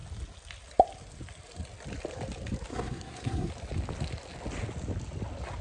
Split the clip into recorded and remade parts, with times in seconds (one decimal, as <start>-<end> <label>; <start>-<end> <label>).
0.0-2.7 recorded; 2.7-3.5 remade; 3.5-5.6 recorded